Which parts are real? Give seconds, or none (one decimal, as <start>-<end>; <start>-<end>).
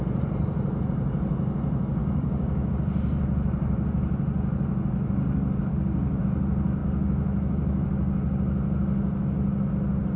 0.0-2.0; 2.7-5.7; 6.2-10.2